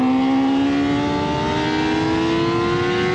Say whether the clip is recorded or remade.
recorded